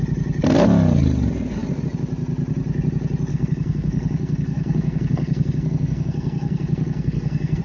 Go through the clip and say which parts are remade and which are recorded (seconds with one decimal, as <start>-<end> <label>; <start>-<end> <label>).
0.0-3.3 recorded; 3.3-7.6 remade